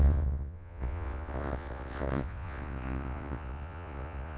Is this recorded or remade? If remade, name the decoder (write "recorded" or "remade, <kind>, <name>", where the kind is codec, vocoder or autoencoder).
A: remade, vocoder, Vocos